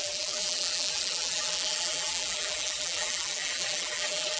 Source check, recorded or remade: remade